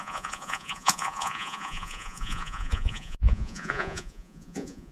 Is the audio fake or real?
fake